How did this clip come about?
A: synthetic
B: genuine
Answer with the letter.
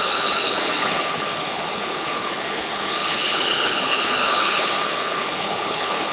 A